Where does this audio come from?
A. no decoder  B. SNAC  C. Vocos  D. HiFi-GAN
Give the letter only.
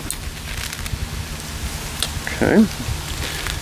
A